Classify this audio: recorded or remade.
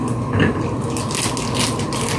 recorded